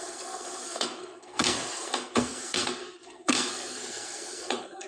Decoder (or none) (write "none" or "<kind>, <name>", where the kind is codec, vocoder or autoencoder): codec, SNAC